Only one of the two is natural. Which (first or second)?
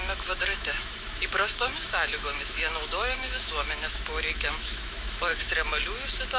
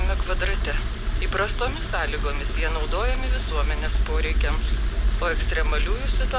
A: second